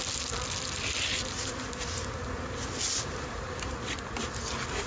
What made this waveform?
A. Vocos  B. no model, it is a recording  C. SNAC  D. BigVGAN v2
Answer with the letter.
B